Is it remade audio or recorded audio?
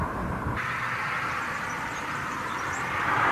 remade